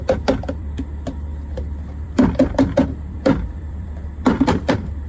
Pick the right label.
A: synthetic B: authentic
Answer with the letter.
A